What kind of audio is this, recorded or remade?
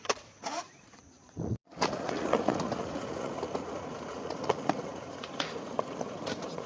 remade